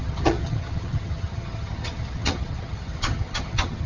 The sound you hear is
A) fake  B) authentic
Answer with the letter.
A